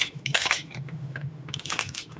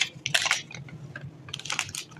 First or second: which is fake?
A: first